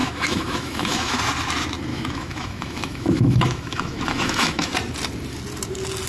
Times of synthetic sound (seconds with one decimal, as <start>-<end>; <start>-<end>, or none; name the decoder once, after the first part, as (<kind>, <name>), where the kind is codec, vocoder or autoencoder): 0.0-1.2 (autoencoder, DAC-VAE); 1.9-4.7